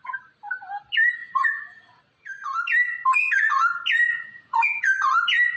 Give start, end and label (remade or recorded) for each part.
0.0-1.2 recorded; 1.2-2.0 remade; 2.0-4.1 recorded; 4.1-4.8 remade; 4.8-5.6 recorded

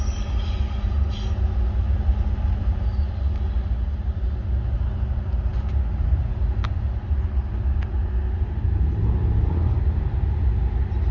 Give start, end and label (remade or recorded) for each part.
0.0-11.1 recorded

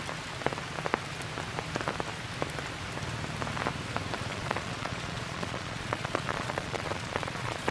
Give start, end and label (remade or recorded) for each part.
0.0-4.3 recorded; 4.3-7.7 remade